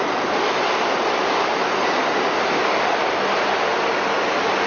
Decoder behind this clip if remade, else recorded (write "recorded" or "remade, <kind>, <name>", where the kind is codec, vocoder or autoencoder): recorded